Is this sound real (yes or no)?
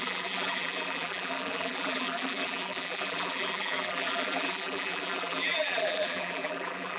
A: no